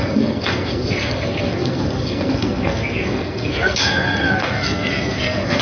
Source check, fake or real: fake